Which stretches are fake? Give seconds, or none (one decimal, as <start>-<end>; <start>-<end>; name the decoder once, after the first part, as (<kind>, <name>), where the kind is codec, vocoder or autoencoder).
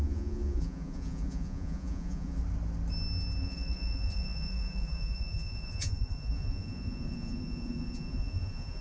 0.0-2.4 (vocoder, Vocos); 3.4-8.8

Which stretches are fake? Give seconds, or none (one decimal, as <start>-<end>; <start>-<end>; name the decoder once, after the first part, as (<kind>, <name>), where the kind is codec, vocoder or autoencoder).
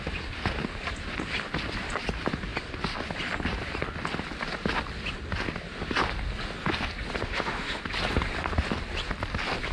7.2-7.8 (autoencoder, DAC-VAE)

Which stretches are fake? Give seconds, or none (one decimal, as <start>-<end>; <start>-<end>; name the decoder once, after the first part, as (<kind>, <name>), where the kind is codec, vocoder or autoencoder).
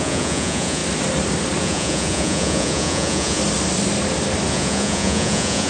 0.0-0.8 (vocoder, Vocos); 1.6-3.4; 4.5-5.7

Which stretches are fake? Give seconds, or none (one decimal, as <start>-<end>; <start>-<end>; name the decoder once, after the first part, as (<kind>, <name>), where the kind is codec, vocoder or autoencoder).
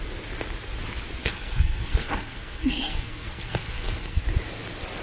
1.2-4.2 (codec, SNAC)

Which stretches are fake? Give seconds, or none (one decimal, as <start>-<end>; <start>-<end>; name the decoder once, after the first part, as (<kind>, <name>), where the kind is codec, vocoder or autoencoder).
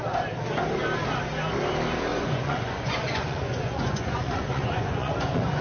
2.1-5.6 (vocoder, Vocos)